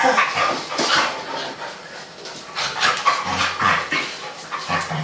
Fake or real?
real